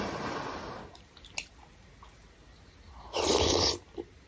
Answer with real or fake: real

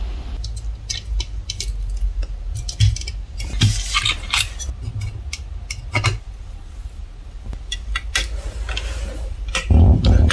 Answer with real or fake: real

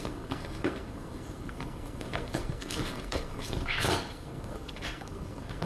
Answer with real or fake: fake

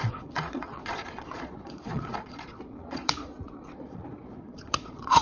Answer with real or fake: fake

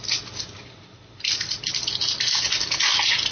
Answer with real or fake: real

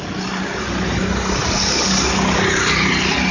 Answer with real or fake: real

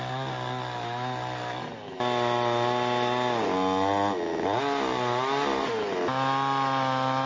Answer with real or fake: real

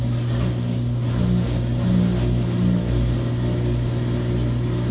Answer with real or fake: real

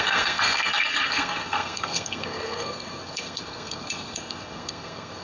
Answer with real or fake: fake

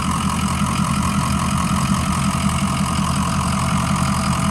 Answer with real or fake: real